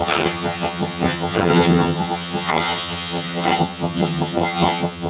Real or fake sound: fake